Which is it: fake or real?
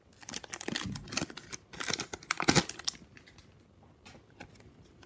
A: real